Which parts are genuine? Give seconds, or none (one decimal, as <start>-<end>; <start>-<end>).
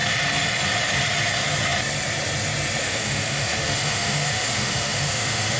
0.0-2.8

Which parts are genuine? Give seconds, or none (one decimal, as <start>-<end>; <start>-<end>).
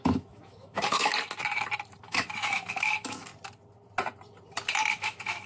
1.1-2.0; 3.3-4.9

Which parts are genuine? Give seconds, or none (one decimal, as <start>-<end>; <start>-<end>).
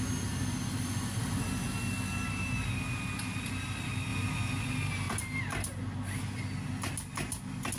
0.0-7.8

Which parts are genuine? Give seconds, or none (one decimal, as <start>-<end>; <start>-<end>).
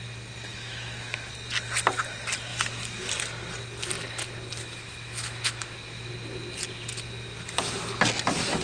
0.0-0.5; 1.3-4.6; 6.1-8.6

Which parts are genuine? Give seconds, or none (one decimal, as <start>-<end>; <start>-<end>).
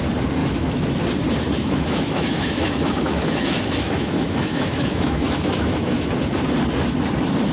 0.0-0.4; 1.0-1.6; 6.1-7.5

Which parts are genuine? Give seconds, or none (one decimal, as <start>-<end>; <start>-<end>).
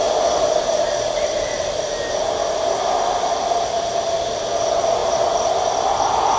0.0-6.4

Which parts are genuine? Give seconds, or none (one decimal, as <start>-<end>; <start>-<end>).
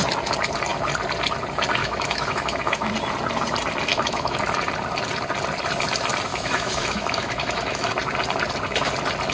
0.0-1.8; 2.9-3.9; 4.4-6.3; 7.9-9.3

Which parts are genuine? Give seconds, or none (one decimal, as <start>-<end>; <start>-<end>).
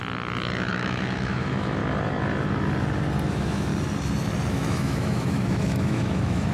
0.0-0.7; 1.8-3.3; 3.7-4.5